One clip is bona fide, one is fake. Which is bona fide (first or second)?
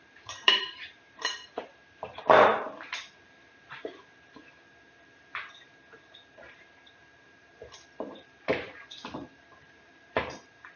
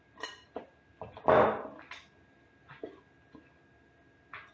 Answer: second